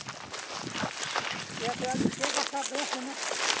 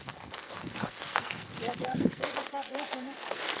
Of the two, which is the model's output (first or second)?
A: second